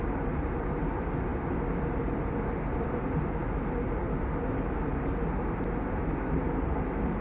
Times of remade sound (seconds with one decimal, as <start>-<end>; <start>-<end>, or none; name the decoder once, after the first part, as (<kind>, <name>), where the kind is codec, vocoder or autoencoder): none